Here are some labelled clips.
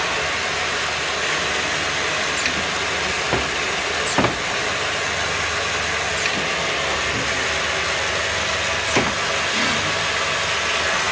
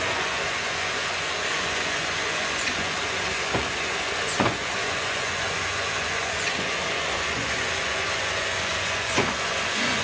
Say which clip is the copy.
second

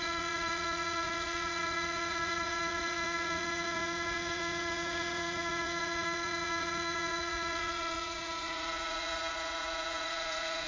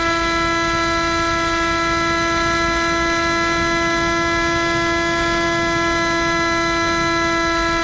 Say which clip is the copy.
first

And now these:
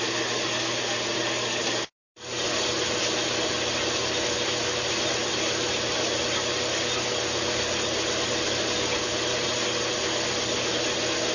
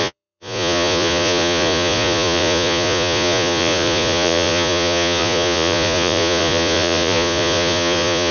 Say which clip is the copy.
second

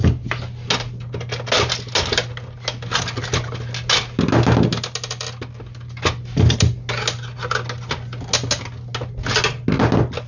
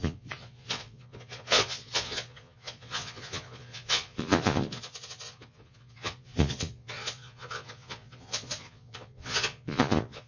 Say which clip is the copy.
second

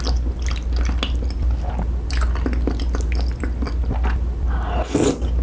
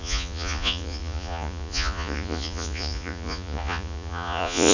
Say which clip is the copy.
second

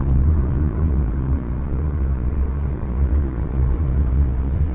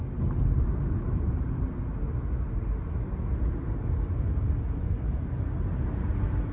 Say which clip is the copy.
first